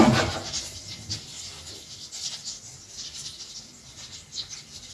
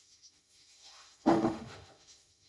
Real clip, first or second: first